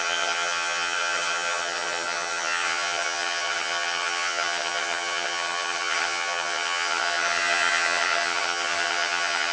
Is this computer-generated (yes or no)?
yes